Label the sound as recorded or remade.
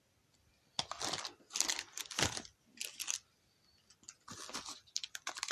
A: recorded